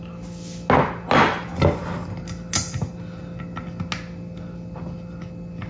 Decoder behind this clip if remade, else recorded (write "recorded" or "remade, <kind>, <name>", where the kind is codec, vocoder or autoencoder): recorded